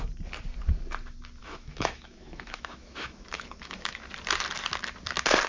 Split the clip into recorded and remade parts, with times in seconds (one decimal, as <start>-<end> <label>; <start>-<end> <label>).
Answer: 0.0-1.4 recorded; 1.4-4.0 remade; 4.0-5.5 recorded